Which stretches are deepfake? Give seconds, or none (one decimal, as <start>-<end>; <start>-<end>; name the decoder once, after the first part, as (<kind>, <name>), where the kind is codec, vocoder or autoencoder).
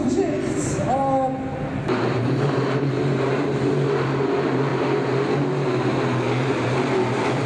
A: 1.8-7.5 (vocoder, BigVGAN v2)